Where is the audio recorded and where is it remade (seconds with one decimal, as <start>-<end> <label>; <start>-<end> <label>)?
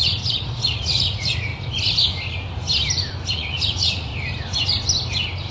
0.0-1.5 remade; 1.5-3.3 recorded; 3.3-4.1 remade; 4.1-5.5 recorded